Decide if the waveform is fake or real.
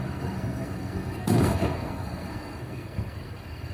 fake